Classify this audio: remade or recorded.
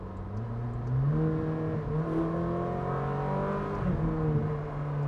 recorded